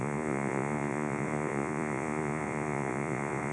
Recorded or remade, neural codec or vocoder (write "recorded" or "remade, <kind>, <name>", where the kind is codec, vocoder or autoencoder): remade, vocoder, Vocos